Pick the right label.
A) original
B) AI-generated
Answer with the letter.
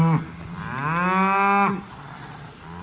A